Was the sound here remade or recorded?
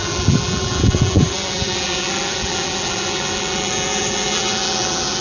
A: remade